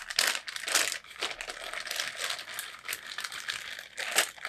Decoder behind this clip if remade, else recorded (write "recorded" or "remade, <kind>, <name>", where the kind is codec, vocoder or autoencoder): recorded